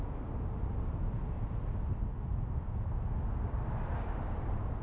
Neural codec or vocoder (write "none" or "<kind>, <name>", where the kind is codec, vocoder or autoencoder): none